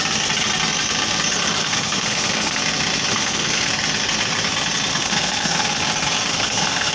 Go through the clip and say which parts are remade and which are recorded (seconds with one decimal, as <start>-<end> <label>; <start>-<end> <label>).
0.0-1.6 recorded; 1.6-2.6 remade; 2.6-3.1 recorded; 3.1-3.7 remade; 3.7-4.9 recorded; 4.9-5.8 remade; 5.8-6.3 recorded; 6.3-6.9 remade